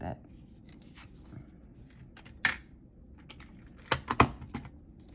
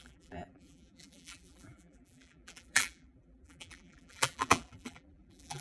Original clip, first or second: first